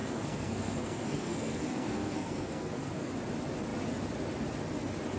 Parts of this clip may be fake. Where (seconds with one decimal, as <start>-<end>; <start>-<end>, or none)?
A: 0.0-3.1